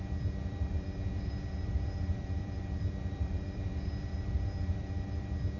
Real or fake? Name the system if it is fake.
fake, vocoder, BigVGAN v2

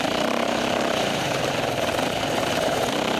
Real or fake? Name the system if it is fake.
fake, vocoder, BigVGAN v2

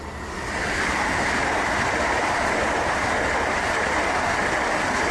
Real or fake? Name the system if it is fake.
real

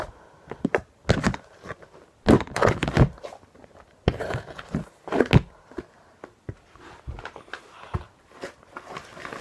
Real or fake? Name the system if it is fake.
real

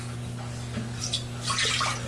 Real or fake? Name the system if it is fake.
real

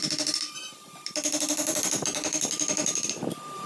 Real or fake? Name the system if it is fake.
fake, vocoder, BigVGAN v2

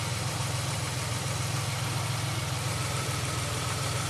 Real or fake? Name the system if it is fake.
fake, vocoder, BigVGAN v2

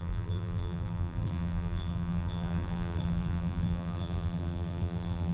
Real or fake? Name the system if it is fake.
fake, vocoder, BigVGAN v2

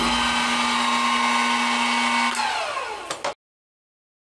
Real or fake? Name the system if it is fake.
real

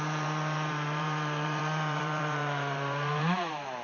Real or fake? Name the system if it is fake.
fake, vocoder, BigVGAN v2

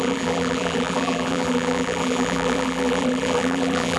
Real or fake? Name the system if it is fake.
fake, vocoder, BigVGAN v2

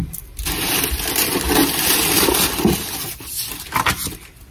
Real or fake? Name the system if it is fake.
real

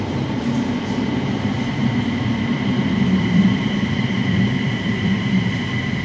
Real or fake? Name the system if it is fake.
fake, vocoder, BigVGAN v2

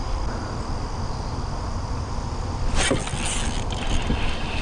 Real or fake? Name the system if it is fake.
real